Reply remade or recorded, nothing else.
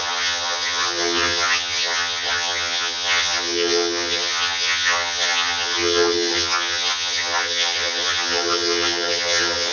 remade